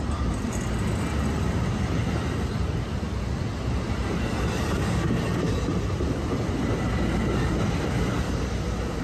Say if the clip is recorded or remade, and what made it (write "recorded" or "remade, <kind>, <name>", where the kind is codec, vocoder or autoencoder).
recorded